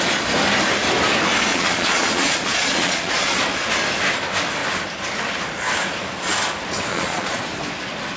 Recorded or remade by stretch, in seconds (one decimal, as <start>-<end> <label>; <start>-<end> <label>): 0.0-1.5 recorded; 1.5-3.3 remade; 3.3-6.9 recorded; 6.9-7.4 remade; 7.4-8.2 recorded